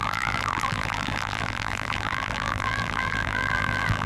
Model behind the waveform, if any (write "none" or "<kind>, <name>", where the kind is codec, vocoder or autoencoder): vocoder, BigVGAN v2